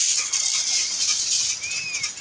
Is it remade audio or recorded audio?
recorded